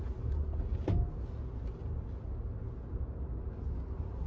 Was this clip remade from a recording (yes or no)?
no